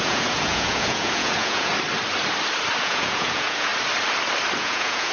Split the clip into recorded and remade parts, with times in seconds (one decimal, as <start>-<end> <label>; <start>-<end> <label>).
0.0-1.7 remade; 1.7-2.8 recorded; 2.8-3.7 remade; 3.7-4.6 recorded; 4.6-5.1 remade